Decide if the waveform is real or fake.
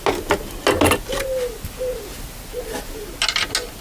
real